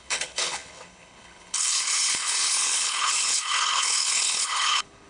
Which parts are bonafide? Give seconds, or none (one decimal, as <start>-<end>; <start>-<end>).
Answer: none